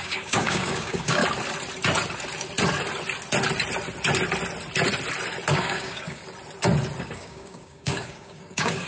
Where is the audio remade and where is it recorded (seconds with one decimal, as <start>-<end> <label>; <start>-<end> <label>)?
0.0-1.2 remade; 1.2-5.5 recorded; 5.5-6.2 remade; 6.2-7.0 recorded; 7.0-8.9 remade